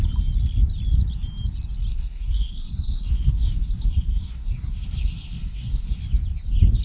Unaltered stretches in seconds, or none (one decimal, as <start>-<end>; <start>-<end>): 0.0-1.9; 6.0-6.8